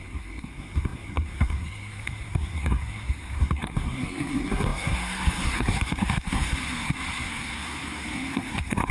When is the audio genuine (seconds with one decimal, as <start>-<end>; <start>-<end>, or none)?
none